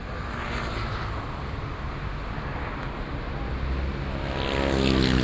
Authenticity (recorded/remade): recorded